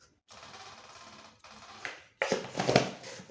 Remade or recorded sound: recorded